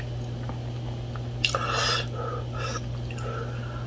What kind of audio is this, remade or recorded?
recorded